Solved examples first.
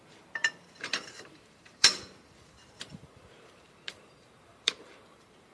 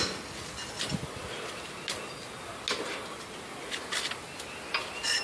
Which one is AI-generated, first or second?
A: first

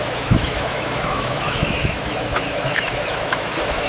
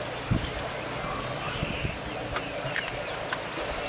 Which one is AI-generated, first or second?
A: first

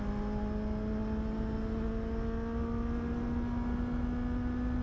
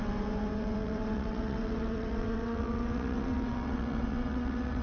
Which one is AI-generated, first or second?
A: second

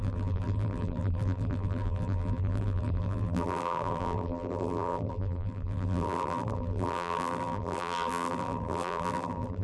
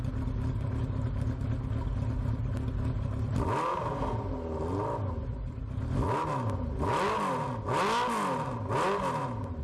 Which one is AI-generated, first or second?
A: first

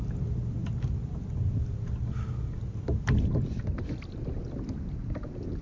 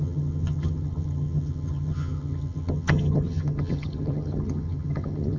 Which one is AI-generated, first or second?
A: second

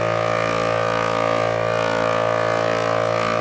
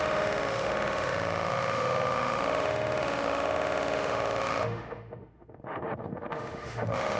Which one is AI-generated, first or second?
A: second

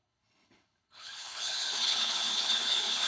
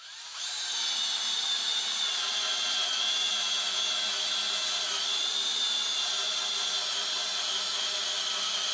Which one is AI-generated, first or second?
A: first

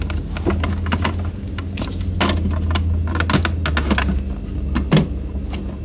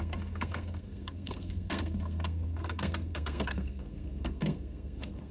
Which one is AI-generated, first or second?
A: second